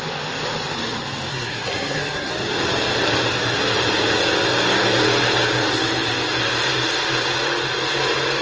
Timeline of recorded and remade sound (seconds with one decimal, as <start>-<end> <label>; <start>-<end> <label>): 0.0-1.3 recorded; 1.3-2.3 remade; 2.3-8.4 recorded